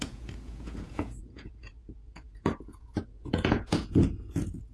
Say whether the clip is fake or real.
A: fake